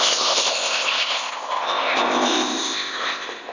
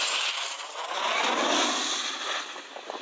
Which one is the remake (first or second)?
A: first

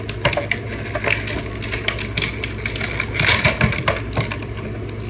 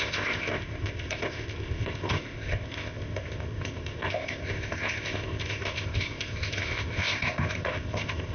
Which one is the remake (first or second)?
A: second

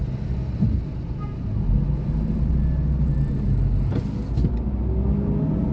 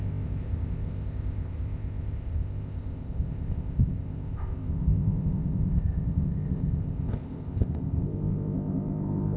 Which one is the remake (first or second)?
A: second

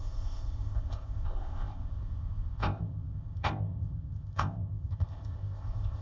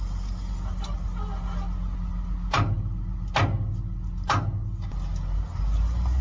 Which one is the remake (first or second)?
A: first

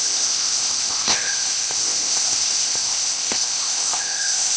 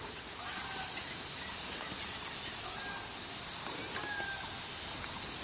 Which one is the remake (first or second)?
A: first